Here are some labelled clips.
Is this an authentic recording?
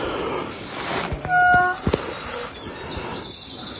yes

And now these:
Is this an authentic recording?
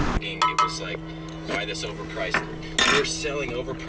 yes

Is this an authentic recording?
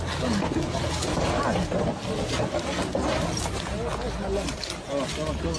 yes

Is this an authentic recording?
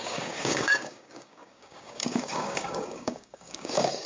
no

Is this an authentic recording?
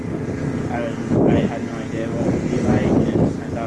yes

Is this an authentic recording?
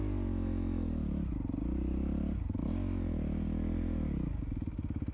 yes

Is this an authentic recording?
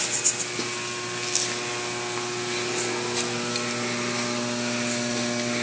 yes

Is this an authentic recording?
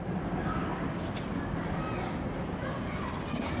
yes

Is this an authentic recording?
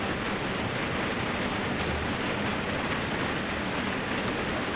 yes